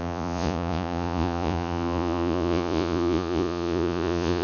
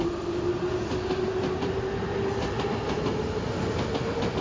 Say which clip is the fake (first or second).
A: first